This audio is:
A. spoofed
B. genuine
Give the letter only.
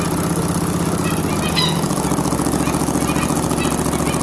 B